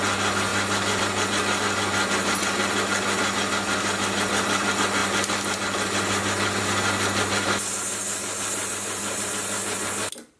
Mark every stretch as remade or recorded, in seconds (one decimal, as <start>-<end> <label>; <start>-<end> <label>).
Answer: 0.0-8.6 recorded; 8.6-9.3 remade; 9.3-10.4 recorded